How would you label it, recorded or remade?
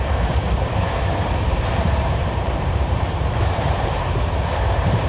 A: remade